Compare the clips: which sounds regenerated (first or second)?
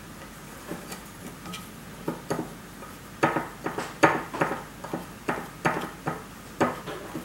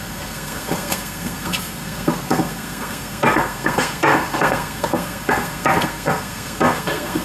second